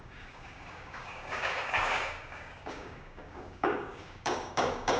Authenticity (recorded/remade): remade